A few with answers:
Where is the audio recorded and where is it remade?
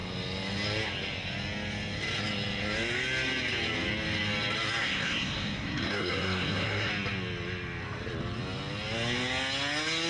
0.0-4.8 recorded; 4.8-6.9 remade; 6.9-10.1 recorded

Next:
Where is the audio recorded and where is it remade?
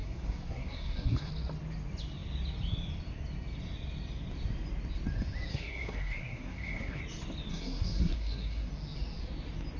0.0-1.3 remade; 1.3-5.5 recorded; 5.5-7.0 remade; 7.0-7.5 recorded; 7.5-8.7 remade; 8.7-9.8 recorded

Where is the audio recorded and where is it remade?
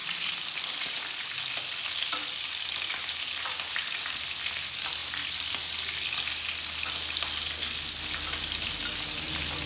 0.0-9.7 recorded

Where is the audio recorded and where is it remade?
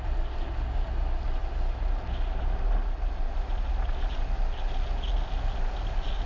0.0-6.3 recorded